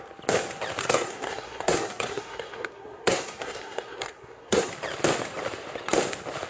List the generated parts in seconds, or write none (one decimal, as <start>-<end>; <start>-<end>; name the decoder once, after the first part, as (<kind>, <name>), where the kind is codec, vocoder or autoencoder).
0.8-4.7 (codec, SNAC)